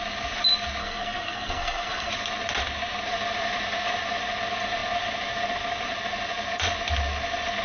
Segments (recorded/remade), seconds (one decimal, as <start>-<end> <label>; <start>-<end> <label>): 0.0-0.8 recorded; 0.8-2.1 remade; 2.1-7.6 recorded